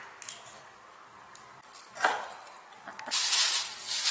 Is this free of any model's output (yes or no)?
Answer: yes